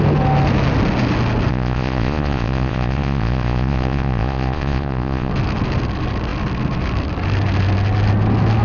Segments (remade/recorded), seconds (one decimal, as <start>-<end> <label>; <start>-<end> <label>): 0.0-1.5 recorded; 1.5-5.3 remade; 5.3-8.6 recorded